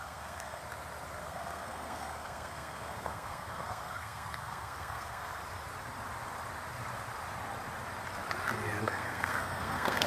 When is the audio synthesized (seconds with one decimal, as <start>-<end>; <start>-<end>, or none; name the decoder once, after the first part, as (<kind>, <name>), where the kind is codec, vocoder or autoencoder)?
0.0-0.6 (codec, SNAC); 1.2-5.4; 8.8-10.1